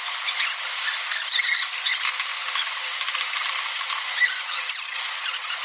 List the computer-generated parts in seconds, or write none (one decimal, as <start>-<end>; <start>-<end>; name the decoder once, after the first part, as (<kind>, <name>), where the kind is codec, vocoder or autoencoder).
none